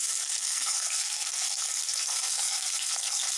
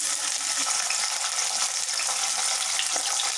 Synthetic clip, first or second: first